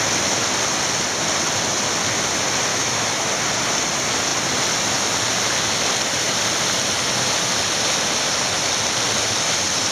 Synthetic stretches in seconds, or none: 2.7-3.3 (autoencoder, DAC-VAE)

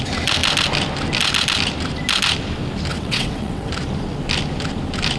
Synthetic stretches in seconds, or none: 2.9-3.7 (vocoder, WaveNeXt)

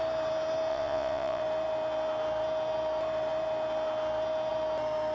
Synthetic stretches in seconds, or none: 0.7-1.4 (vocoder, Vocos)

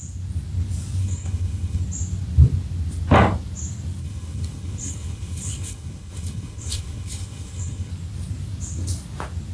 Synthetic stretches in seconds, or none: 1.0-1.8 (codec, HILCodec); 4.0-7.9

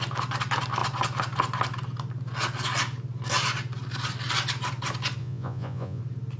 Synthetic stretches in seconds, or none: 5.2-6.0 (vocoder, Vocos)

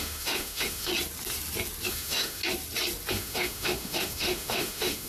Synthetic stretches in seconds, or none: 0.0-0.9 (autoencoder, DAC-VAE); 1.9-2.4; 3.1-5.1

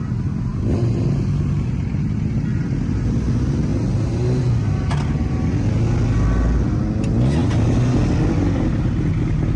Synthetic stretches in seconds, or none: none

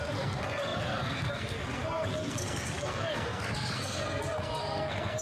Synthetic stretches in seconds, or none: 0.0-5.2 (codec, SNAC)